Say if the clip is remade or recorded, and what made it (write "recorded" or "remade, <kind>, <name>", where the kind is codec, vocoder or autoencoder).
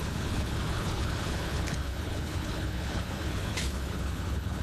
remade, codec, HILCodec